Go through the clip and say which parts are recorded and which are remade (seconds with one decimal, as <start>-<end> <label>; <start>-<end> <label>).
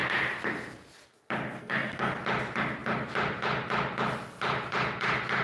0.0-1.6 recorded; 1.6-2.1 remade; 2.1-5.4 recorded